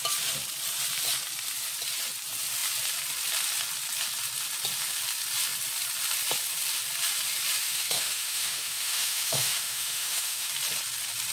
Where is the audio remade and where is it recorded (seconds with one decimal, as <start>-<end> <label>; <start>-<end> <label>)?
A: 0.0-7.6 recorded; 7.6-10.5 remade; 10.5-11.3 recorded